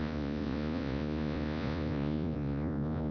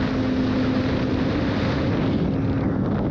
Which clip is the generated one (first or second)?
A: first